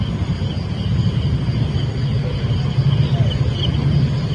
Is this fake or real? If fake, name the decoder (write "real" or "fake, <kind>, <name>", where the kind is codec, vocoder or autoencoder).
real